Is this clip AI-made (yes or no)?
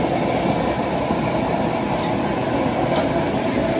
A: no